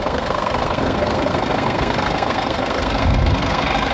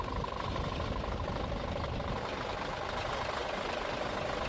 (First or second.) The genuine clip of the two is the second